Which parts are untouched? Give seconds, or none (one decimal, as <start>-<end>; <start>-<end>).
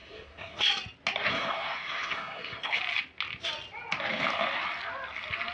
0.6-1.3; 2.8-5.5